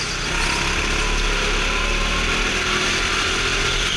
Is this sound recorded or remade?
recorded